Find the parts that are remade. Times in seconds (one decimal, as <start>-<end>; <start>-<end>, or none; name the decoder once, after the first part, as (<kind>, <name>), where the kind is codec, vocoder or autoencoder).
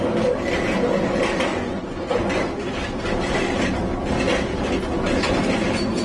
1.5-2.5 (vocoder, Vocos)